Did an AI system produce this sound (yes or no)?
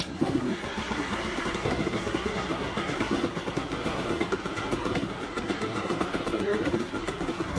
yes